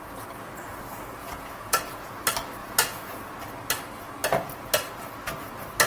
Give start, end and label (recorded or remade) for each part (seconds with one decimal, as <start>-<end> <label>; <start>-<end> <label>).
0.0-1.2 recorded; 1.2-2.1 remade; 2.1-2.6 recorded; 2.6-3.2 remade; 3.2-5.9 recorded